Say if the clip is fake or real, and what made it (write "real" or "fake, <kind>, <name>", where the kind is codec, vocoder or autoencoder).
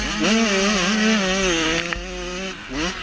real